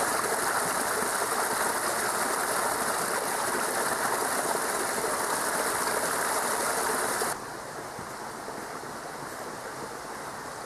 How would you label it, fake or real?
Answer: real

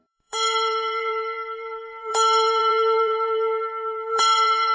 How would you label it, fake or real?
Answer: fake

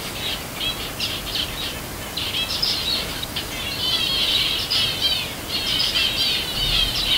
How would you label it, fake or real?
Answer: real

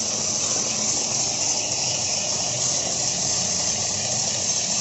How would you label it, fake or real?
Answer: real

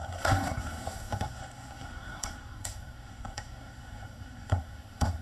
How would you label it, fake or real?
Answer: fake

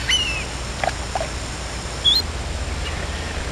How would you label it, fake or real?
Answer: real